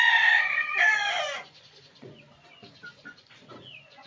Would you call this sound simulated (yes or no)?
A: yes